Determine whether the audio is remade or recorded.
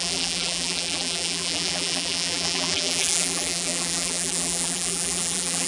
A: remade